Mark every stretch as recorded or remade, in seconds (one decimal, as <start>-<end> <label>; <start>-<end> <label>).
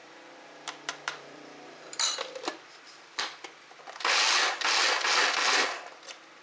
0.0-3.8 remade; 3.8-6.4 recorded